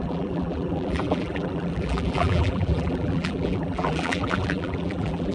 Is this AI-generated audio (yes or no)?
yes